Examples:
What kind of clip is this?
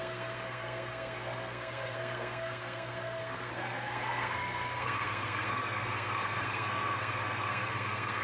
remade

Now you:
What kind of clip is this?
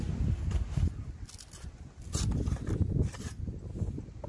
recorded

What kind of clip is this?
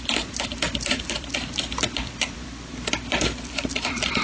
remade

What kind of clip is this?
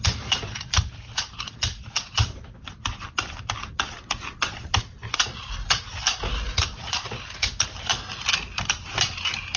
recorded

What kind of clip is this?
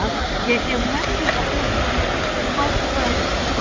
recorded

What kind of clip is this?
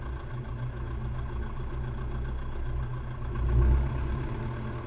recorded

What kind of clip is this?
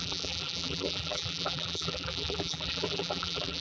remade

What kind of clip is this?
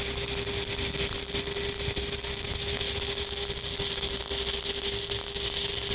recorded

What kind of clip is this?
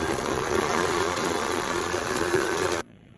remade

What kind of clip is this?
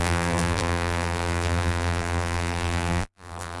remade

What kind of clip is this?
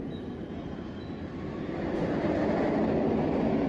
recorded